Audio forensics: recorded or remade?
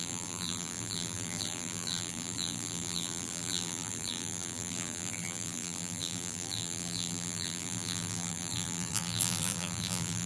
remade